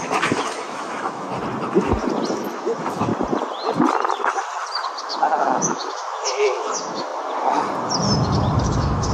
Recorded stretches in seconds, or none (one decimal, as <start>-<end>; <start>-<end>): 1.3-2.3; 3.1-5.4; 7.1-8.6